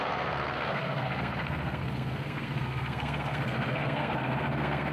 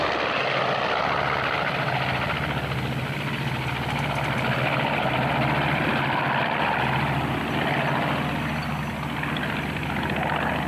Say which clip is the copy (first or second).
first